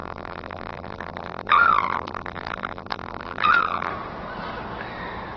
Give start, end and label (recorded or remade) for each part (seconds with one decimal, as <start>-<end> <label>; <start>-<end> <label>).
0.0-3.9 remade; 3.9-5.4 recorded